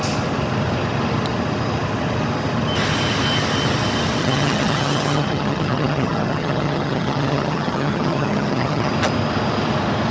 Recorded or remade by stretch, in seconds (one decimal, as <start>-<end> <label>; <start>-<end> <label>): 0.0-4.2 recorded; 4.2-8.9 remade; 8.9-10.1 recorded